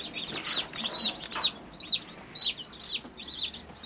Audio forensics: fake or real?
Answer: real